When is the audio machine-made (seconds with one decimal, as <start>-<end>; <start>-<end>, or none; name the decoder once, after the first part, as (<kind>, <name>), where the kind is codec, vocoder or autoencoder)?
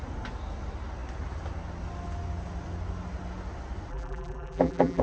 3.9-5.0 (vocoder, BigVGAN v2)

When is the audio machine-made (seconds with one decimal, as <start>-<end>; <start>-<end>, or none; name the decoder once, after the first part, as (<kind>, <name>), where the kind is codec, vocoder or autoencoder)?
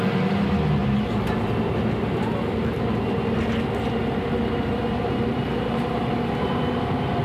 0.8-1.5 (vocoder, BigVGAN v2); 4.0-7.2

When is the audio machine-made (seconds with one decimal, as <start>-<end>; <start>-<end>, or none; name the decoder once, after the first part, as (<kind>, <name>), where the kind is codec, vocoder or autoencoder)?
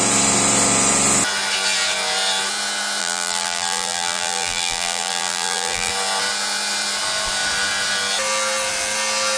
3.0-5.9 (vocoder, BigVGAN v2)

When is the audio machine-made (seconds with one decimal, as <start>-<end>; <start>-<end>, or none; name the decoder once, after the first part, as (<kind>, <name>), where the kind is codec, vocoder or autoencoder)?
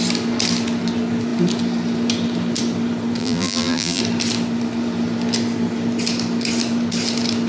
3.2-4.0 (vocoder, BigVGAN v2)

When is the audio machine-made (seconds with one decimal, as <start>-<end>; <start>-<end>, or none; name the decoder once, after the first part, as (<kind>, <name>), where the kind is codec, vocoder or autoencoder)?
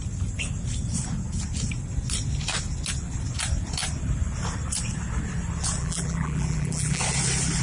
5.8-7.0 (vocoder, BigVGAN v2)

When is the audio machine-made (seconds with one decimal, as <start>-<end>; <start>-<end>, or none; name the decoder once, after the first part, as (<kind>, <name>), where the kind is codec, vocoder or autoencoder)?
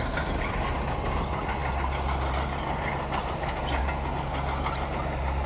3.2-3.8 (vocoder, BigVGAN v2)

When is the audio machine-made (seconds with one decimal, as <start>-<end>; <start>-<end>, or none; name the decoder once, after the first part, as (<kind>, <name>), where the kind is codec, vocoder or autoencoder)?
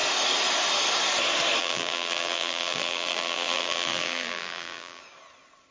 1.6-5.0 (vocoder, BigVGAN v2)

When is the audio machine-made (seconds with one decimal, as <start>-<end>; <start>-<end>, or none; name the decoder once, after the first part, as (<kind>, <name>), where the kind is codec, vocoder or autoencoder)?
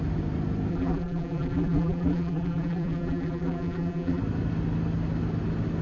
0.7-4.2 (vocoder, BigVGAN v2)